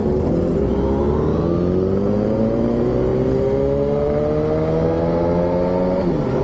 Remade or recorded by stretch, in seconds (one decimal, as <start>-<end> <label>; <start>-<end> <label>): 0.0-6.4 recorded